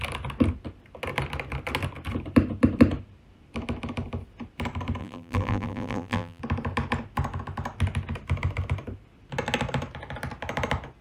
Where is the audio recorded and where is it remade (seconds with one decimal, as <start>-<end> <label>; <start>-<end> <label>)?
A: 0.0-5.0 recorded; 5.0-6.4 remade; 6.4-11.0 recorded